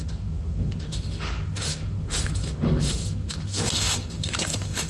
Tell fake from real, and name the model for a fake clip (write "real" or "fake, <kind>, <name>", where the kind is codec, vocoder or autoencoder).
fake, autoencoder, DAC-VAE